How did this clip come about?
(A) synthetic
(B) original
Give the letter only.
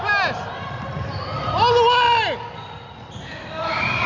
B